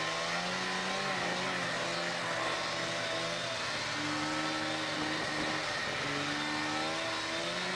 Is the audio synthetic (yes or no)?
no